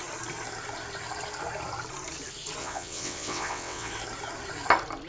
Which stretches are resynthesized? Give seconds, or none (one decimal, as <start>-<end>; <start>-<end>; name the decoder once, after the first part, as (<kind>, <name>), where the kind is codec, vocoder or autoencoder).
2.6-3.9 (vocoder, WaveNeXt)